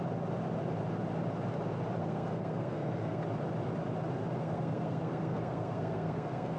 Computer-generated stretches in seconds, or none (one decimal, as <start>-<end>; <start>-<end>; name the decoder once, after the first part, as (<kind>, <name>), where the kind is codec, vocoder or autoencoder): 2.0-3.2 (codec, SNAC); 4.4-6.6